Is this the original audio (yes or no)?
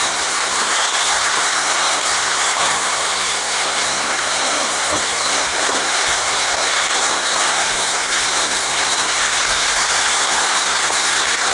no